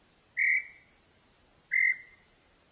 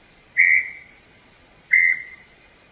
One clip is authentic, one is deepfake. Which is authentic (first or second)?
first